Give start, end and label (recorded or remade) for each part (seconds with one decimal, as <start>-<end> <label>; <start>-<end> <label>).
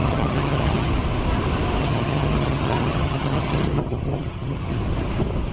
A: 0.0-0.9 remade; 0.9-1.8 recorded; 1.8-4.8 remade; 4.8-5.5 recorded